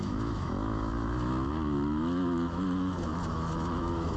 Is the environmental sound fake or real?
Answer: fake